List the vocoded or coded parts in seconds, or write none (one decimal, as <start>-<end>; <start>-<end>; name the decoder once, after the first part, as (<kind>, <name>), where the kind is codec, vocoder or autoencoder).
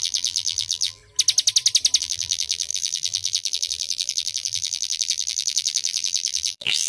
0.0-1.0 (vocoder, BigVGAN v2); 2.0-6.9